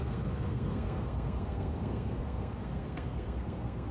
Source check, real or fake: fake